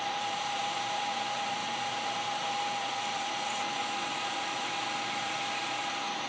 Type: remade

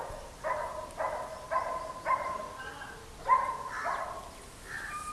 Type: recorded